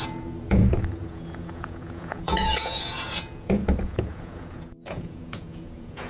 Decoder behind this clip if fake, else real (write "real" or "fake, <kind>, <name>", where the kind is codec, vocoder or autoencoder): fake, vocoder, Vocos